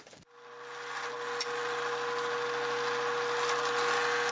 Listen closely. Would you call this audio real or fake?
real